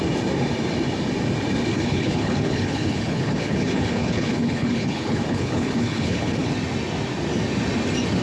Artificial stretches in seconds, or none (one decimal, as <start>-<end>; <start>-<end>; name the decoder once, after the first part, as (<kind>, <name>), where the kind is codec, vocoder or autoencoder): 1.7-6.5 (codec, HILCodec)